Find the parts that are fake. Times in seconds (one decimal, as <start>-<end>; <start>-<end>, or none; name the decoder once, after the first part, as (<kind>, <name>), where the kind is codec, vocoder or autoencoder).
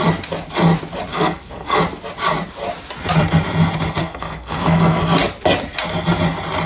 1.1-1.8 (codec, SNAC); 4.0-5.0